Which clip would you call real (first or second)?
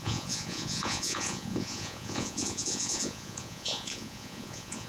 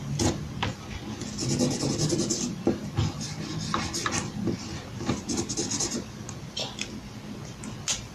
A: second